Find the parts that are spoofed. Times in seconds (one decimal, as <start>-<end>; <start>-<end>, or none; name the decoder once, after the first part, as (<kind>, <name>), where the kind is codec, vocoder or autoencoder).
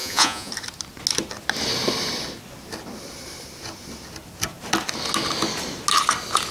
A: 0.0-0.5 (vocoder, Vocos)